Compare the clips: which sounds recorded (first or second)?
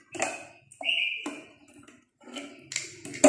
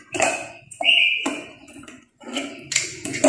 first